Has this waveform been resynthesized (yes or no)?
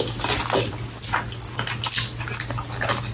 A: no